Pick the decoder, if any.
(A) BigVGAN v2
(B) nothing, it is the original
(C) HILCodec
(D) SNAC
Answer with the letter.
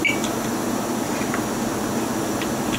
B